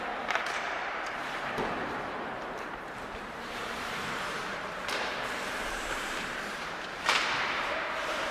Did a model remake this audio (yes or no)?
yes